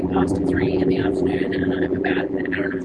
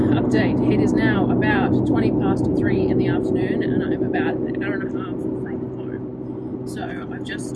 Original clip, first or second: second